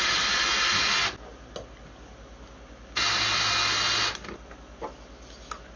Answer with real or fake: real